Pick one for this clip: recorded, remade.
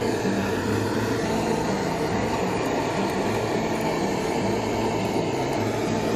recorded